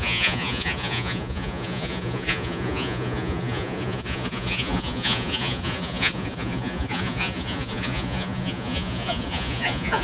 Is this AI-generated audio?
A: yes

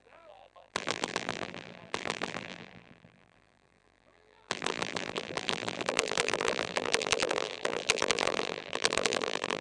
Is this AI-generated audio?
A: yes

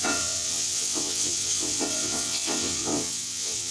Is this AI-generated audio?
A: yes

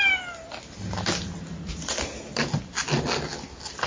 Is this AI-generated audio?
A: no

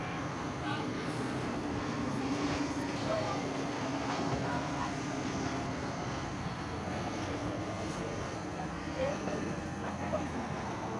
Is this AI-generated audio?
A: yes